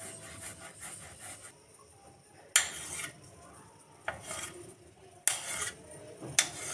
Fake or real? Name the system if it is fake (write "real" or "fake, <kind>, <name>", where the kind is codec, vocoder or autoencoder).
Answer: real